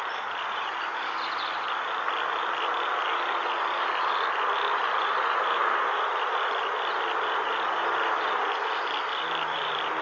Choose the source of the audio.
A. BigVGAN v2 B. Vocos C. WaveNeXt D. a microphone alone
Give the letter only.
D